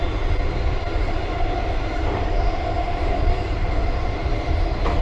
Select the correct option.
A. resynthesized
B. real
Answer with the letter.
A